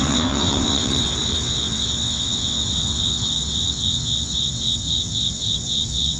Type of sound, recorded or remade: remade